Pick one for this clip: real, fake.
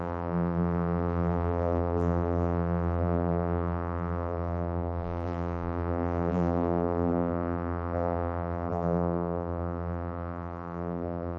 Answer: fake